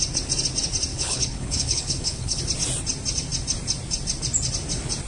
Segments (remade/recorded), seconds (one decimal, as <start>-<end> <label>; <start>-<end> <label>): 0.0-0.9 recorded; 0.9-2.4 remade; 2.4-5.1 recorded